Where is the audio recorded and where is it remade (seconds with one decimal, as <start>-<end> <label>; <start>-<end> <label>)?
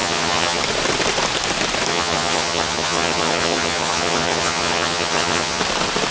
0.0-0.6 remade; 0.6-1.9 recorded; 1.9-5.6 remade; 5.6-6.1 recorded